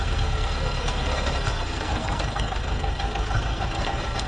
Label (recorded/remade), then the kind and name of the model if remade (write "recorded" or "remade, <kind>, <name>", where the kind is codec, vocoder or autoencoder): remade, codec, SNAC